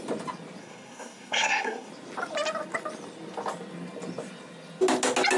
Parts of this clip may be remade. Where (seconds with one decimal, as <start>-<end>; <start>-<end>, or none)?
0.6-1.9